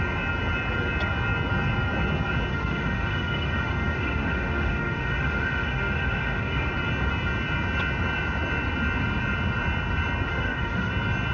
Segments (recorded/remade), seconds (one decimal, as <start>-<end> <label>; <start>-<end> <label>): 0.0-2.5 recorded; 2.5-6.7 remade; 6.7-10.3 recorded; 10.3-10.9 remade; 10.9-11.3 recorded